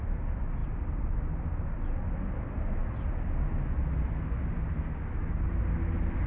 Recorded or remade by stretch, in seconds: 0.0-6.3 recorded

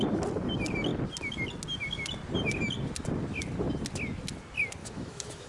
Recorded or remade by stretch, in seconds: 0.0-4.8 recorded; 4.8-5.5 remade

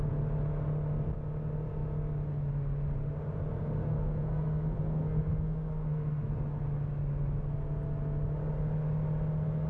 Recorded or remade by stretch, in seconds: 0.0-3.8 recorded; 3.8-6.3 remade; 6.3-9.7 recorded

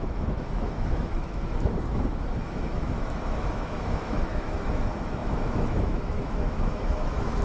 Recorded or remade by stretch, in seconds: 0.0-7.4 remade

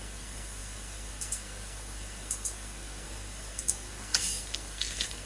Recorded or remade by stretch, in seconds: 0.0-5.3 remade